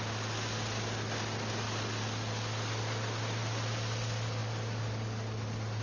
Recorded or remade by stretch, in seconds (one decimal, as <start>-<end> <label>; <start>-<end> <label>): 0.0-5.8 recorded

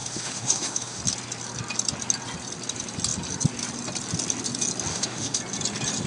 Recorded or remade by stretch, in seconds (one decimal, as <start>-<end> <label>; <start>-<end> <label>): 0.0-1.0 remade; 1.0-4.9 recorded; 4.9-5.4 remade; 5.4-6.1 recorded

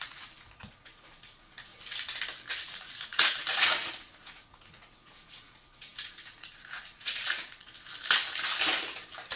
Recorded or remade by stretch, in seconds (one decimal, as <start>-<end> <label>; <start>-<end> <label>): 0.0-1.7 remade; 1.7-2.5 recorded; 2.5-7.6 remade; 7.6-9.4 recorded

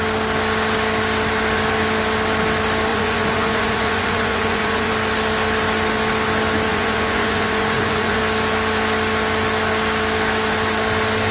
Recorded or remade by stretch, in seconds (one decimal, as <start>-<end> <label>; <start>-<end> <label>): 0.0-2.9 recorded; 2.9-4.9 remade; 4.9-6.7 recorded; 6.7-8.2 remade; 8.2-11.3 recorded

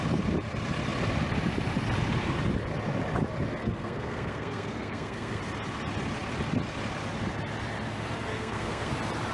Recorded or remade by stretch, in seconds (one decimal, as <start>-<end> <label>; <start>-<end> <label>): 0.0-3.6 recorded; 3.6-5.4 remade; 5.4-8.3 recorded; 8.3-8.9 remade; 8.9-9.3 recorded

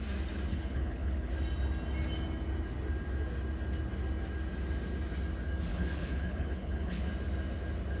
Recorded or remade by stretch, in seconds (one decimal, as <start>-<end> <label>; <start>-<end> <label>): 0.0-0.5 recorded; 0.5-1.3 remade; 1.3-5.7 recorded; 5.7-7.1 remade; 7.1-8.0 recorded

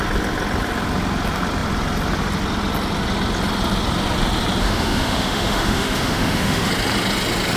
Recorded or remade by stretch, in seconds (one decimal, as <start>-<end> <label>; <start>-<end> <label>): 0.0-4.6 recorded; 4.6-6.7 remade; 6.7-7.6 recorded